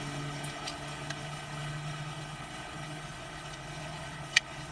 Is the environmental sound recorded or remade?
remade